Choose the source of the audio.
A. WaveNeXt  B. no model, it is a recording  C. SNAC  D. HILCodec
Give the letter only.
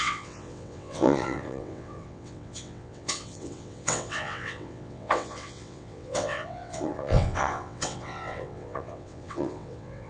A